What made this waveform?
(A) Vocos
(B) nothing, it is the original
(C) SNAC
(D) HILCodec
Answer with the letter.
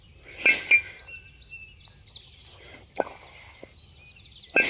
B